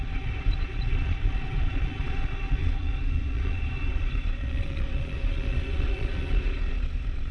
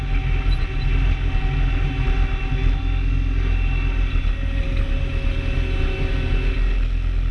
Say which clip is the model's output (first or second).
first